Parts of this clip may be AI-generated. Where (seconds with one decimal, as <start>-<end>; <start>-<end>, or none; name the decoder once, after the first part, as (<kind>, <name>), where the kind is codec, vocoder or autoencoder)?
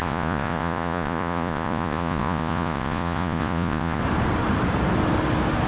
0.0-4.0 (vocoder, Vocos)